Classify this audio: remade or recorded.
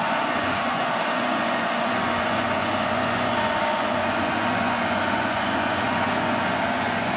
remade